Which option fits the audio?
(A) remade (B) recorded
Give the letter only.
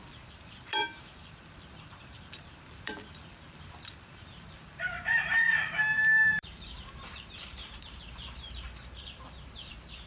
A